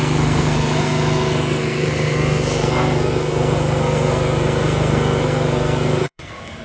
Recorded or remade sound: remade